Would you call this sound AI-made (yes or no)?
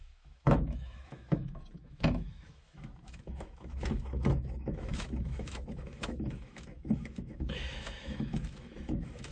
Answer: yes